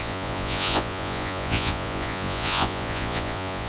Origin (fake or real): fake